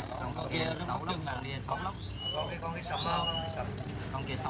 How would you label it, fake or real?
real